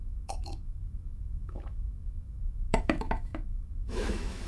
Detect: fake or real fake